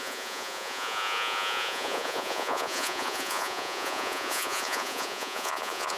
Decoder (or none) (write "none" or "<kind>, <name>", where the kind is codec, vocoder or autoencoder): vocoder, Vocos